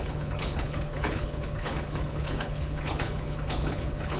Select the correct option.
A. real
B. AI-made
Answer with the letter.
B